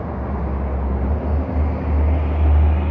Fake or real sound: real